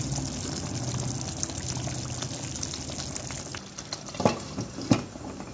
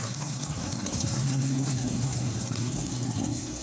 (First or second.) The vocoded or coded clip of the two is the second